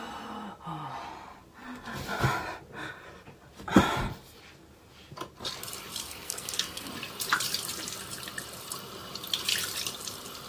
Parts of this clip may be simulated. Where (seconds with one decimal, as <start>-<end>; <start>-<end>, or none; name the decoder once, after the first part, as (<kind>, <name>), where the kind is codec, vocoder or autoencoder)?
6.0-6.9 (codec, SNAC)